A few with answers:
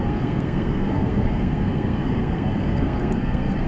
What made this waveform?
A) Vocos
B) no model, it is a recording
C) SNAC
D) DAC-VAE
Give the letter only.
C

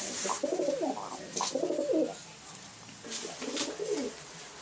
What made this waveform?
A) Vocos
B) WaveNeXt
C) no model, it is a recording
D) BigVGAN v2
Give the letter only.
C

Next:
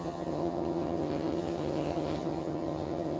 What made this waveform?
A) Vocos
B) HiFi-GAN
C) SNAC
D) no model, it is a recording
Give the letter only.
B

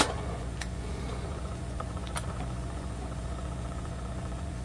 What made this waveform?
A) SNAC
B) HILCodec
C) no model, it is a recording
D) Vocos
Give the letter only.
D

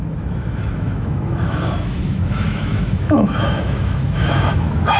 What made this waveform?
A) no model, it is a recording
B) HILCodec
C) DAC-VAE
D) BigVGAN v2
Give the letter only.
C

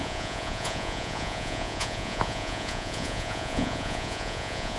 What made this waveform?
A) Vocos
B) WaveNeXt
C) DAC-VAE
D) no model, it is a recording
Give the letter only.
A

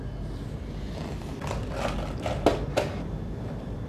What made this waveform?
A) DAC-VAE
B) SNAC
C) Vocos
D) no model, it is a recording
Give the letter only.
D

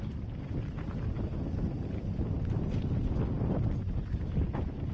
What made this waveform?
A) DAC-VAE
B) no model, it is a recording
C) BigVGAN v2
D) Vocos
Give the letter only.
B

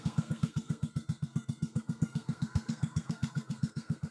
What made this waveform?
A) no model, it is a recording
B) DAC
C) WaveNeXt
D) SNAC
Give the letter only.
D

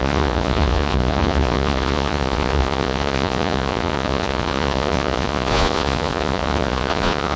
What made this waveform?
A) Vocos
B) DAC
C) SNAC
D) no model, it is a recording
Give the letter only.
A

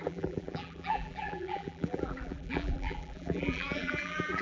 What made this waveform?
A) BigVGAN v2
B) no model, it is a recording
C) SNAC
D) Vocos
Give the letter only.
A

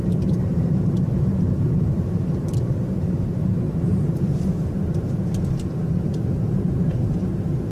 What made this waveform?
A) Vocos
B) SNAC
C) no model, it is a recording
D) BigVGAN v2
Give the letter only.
D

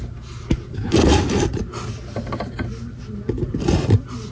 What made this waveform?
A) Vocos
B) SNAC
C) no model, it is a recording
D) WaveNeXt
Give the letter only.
C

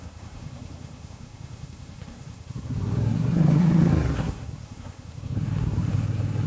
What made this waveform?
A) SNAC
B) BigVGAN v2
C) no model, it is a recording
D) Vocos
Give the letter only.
A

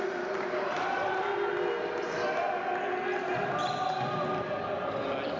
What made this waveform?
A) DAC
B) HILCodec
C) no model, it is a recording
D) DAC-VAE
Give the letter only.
C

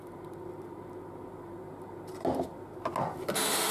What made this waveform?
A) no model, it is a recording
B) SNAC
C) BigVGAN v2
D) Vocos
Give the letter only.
A